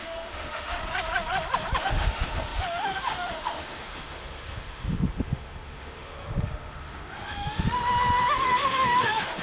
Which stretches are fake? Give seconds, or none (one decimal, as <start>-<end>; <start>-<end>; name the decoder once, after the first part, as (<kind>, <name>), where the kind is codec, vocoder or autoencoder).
0.0-0.8 (autoencoder, DAC-VAE); 1.8-7.8; 8.3-9.4